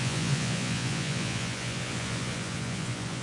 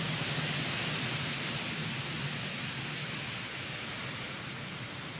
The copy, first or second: first